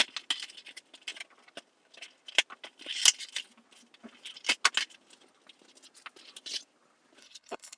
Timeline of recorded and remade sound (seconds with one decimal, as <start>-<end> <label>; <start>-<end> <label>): 0.0-7.2 recorded; 7.2-7.8 remade

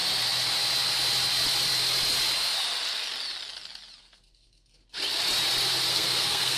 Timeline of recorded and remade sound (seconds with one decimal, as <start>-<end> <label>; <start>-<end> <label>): 0.0-4.0 recorded; 4.0-4.8 remade; 4.8-5.9 recorded; 5.9-6.6 remade

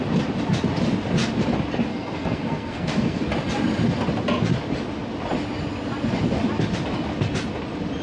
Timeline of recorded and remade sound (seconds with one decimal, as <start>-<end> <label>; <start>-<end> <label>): 0.0-1.9 recorded; 1.9-3.2 remade; 3.2-8.0 recorded

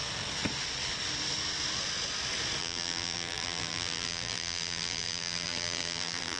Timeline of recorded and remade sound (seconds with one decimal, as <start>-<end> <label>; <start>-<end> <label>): 0.0-2.6 recorded; 2.6-6.4 remade